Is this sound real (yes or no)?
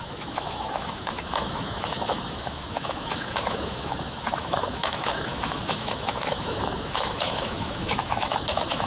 no